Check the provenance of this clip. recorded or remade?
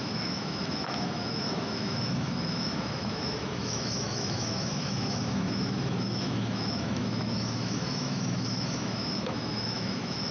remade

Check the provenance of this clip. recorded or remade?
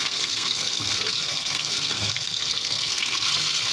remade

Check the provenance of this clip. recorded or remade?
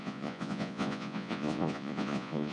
remade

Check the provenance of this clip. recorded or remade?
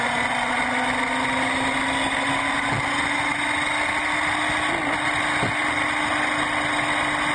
recorded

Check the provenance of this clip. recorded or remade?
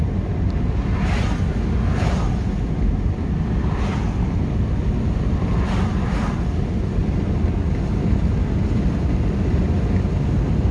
recorded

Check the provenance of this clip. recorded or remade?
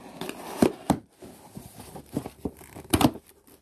recorded